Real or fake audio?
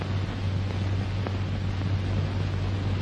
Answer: real